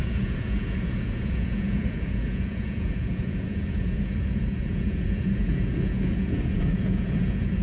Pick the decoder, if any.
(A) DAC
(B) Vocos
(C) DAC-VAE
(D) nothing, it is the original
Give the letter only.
B